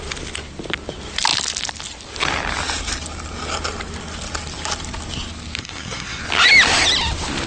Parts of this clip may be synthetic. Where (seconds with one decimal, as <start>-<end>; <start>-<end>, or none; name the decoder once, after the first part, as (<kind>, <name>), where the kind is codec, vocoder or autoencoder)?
5.6-6.2 (codec, SNAC)